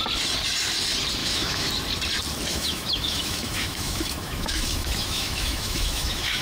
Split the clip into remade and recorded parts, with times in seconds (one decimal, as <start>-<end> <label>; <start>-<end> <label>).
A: 0.0-1.2 recorded; 1.2-1.7 remade; 1.7-2.5 recorded; 2.5-6.4 remade